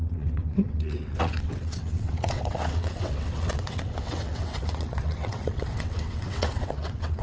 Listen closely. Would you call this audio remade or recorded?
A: remade